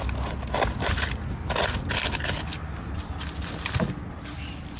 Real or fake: real